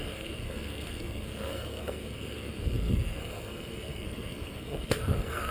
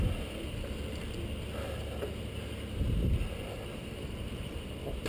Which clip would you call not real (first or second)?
first